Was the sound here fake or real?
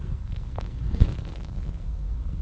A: fake